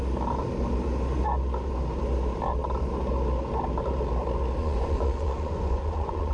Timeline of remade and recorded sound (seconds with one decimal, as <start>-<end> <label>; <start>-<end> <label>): 0.0-4.6 recorded; 4.6-6.3 remade